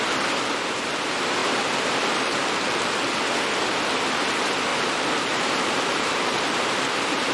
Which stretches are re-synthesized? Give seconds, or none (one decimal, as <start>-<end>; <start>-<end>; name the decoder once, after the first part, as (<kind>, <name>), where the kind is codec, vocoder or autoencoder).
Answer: 1.4-3.2 (vocoder, BigVGAN v2); 4.7-7.3